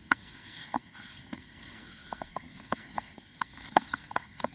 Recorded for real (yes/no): no